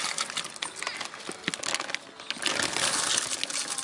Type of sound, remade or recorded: recorded